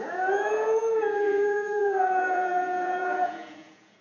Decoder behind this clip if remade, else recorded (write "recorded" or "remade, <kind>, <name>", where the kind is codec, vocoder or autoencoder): remade, vocoder, Vocos